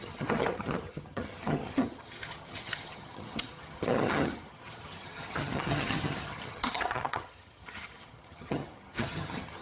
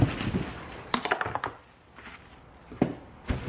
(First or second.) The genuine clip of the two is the second